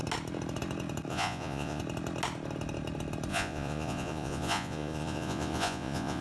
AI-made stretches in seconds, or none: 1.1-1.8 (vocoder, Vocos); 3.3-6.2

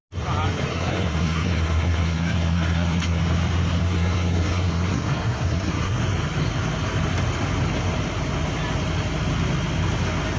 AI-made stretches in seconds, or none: 0.7-3.2 (codec, SNAC); 3.8-6.0

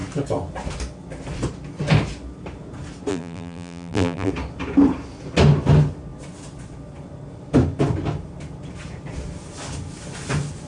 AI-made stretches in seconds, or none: 3.1-4.3 (vocoder, BigVGAN v2)

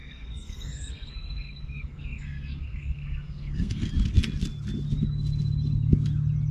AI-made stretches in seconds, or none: 0.0-3.9 (codec, SNAC)

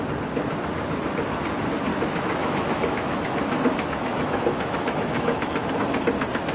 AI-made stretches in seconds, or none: 1.9-5.7 (autoencoder, DAC-VAE)

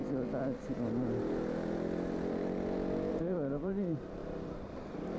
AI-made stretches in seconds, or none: 3.1-4.2 (vocoder, BigVGAN v2)

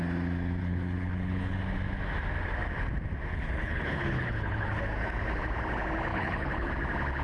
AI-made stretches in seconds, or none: 0.6-1.6 (codec, HILCodec); 3.3-4.8; 6.1-6.7